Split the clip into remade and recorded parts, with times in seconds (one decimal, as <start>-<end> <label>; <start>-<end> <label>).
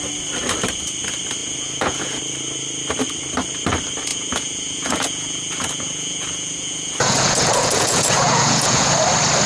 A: 0.0-1.4 recorded; 1.4-2.2 remade; 2.2-4.1 recorded; 4.1-8.9 remade; 8.9-9.5 recorded